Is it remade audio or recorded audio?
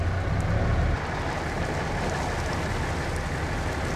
recorded